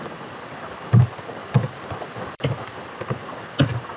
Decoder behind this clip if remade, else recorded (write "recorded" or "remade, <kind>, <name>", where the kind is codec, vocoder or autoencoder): remade, vocoder, BigVGAN v2